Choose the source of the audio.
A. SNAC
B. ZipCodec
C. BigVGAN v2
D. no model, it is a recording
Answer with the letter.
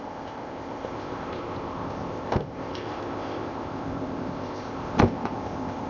B